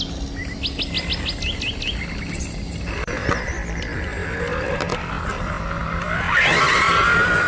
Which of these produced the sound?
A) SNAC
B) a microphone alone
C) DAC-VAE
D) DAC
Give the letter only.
B